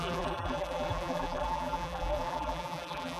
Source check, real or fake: fake